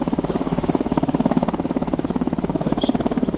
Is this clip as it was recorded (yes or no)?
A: no